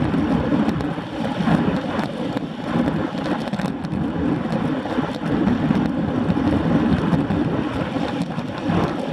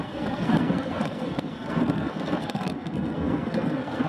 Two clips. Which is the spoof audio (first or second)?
second